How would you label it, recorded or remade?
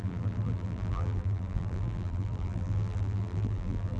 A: remade